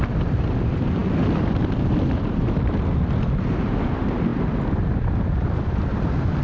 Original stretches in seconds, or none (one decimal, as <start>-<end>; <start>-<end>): 0.0-6.4